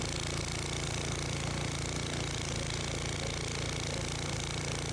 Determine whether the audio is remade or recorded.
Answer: recorded